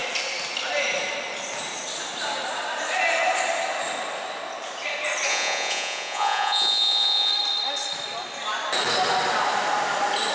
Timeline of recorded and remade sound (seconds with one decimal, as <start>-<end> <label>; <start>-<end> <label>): 0.0-5.3 recorded; 5.3-7.3 remade; 7.3-10.3 recorded